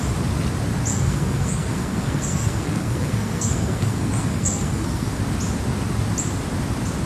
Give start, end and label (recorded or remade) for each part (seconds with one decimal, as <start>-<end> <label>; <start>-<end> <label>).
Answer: 0.0-0.9 recorded; 0.9-5.2 remade; 5.2-7.1 recorded